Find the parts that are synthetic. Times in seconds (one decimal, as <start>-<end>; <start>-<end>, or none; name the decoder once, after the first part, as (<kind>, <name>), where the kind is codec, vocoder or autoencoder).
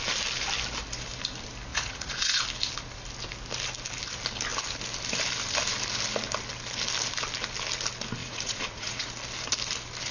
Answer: 1.7-2.4 (vocoder, Vocos); 8.2-9.1